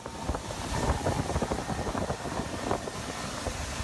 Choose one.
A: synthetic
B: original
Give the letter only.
B